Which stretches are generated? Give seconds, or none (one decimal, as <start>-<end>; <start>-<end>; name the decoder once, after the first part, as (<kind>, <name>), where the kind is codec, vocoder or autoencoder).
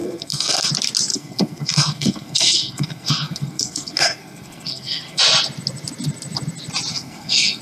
0.0-0.7 (codec, SNAC); 1.1-5.2; 6.9-7.6